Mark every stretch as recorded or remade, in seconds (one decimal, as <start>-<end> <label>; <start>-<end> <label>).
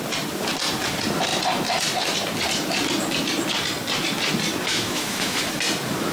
0.0-4.7 recorded; 4.7-5.4 remade; 5.4-6.1 recorded